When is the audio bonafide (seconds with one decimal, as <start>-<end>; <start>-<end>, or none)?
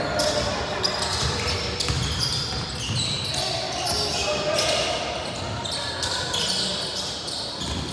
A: 0.0-7.9